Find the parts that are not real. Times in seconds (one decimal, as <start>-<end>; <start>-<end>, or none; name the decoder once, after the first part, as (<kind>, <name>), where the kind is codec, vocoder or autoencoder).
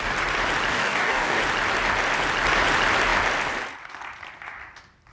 0.7-1.4 (codec, DAC)